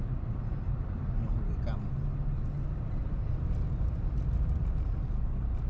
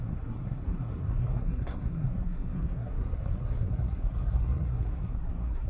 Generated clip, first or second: second